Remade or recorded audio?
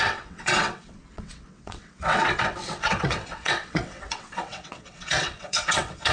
remade